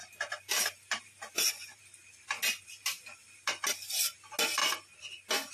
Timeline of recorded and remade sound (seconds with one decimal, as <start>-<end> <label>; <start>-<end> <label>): 0.0-1.8 remade; 1.8-5.5 recorded

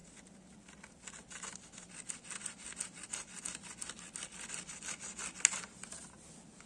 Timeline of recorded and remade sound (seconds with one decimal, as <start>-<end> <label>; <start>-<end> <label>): 0.0-6.7 recorded